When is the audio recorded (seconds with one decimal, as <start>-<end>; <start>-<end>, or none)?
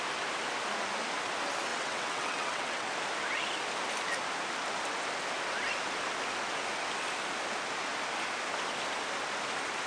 0.0-1.7; 2.9-9.9